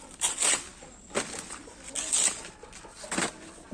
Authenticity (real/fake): real